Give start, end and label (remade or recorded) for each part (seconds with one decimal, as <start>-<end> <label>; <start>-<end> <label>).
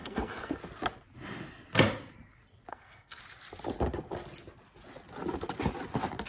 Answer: 0.0-0.6 remade; 0.6-2.7 recorded; 2.7-3.2 remade; 3.2-6.3 recorded